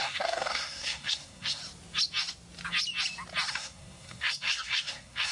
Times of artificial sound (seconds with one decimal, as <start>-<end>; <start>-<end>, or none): 0.0-1.6; 3.5-5.3